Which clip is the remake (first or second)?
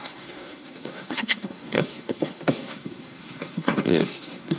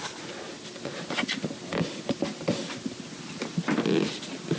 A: first